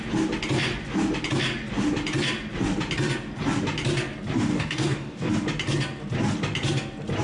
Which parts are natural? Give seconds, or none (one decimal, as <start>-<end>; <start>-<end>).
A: 0.0-4.5; 5.3-7.2